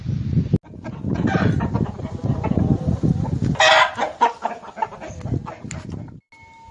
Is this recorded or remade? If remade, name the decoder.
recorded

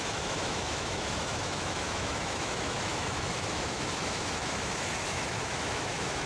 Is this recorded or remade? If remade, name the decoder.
remade, autoencoder, DAC-VAE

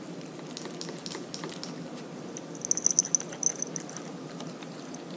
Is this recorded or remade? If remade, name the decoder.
recorded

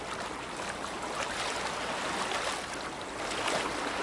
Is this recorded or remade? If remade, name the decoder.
recorded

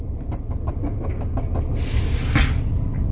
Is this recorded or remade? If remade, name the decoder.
recorded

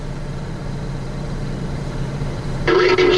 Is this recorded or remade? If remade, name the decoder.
remade, vocoder, BigVGAN v2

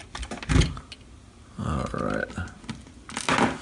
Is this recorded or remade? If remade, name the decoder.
recorded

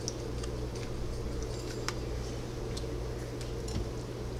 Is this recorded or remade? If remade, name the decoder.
recorded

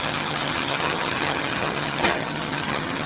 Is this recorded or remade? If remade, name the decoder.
remade, vocoder, HiFi-GAN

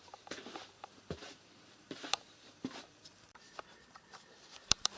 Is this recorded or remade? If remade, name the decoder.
remade, vocoder, BigVGAN v2